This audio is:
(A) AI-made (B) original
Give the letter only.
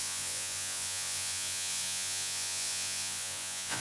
A